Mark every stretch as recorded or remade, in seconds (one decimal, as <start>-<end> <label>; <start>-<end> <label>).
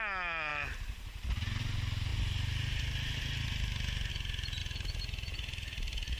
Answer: 0.0-6.2 recorded